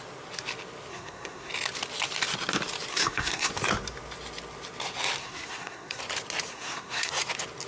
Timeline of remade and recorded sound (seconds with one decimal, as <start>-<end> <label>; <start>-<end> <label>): 0.0-0.9 recorded; 0.9-1.5 remade; 1.5-2.9 recorded; 2.9-3.5 remade; 3.5-5.2 recorded; 5.2-6.0 remade; 6.0-6.5 recorded; 6.5-7.1 remade; 7.1-7.7 recorded